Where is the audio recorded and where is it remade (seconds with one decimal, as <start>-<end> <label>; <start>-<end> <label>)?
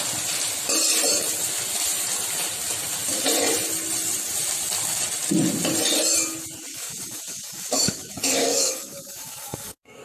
0.0-6.7 recorded; 6.7-10.0 remade